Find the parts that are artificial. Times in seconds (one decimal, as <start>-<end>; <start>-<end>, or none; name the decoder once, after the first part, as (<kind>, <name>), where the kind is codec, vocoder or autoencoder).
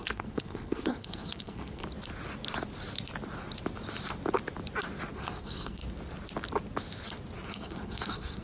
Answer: 0.0-1.8 (codec, SNAC); 5.1-5.8; 7.5-8.4